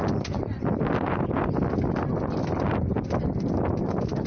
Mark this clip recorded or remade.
recorded